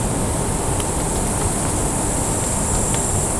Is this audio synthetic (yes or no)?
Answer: no